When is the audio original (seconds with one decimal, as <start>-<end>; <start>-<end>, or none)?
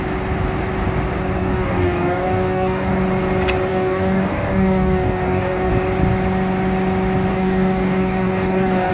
0.0-1.4; 2.9-3.7; 5.7-7.3